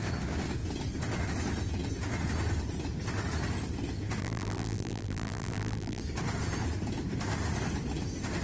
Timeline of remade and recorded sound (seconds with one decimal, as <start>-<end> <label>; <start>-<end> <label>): 0.0-4.2 recorded; 4.2-6.0 remade; 6.0-8.4 recorded